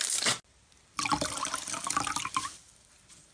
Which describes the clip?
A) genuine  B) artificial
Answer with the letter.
A